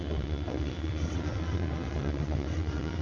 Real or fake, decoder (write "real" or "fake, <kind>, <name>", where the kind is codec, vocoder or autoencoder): fake, vocoder, WaveNeXt